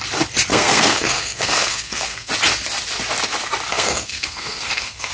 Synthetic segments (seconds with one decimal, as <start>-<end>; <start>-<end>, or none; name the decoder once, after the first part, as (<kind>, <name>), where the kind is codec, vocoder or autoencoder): 0.5-2.3 (codec, SNAC); 3.7-5.1